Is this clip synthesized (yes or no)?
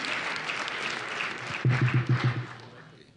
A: no